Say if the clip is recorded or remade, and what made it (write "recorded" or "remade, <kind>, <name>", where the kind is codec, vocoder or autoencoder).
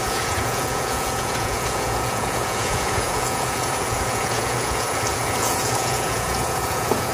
remade, vocoder, Vocos